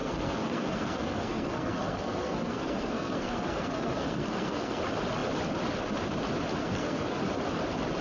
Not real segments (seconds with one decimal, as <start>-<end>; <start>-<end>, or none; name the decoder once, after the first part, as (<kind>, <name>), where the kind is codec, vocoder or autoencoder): 0.0-4.8 (codec, SNAC); 6.6-7.2